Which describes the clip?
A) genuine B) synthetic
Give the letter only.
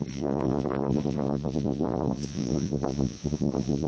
B